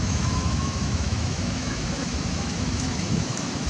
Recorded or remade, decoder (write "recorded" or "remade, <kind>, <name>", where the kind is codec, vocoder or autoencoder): remade, autoencoder, DAC-VAE